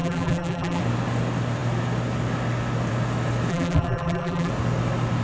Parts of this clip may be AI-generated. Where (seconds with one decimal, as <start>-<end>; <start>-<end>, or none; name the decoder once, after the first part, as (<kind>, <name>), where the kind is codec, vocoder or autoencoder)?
0.0-0.8 (vocoder, BigVGAN v2); 3.5-4.5